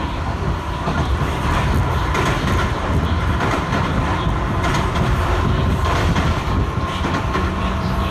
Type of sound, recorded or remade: remade